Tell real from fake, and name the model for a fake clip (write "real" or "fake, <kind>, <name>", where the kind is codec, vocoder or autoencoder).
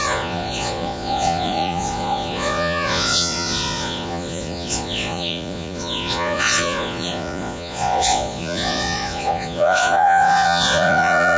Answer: fake, vocoder, Vocos